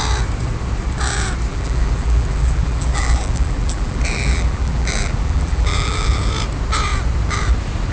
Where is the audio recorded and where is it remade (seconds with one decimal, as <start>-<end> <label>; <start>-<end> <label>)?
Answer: 0.0-1.5 recorded; 1.5-6.2 remade; 6.2-7.9 recorded